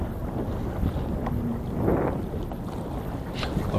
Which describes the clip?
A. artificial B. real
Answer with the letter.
B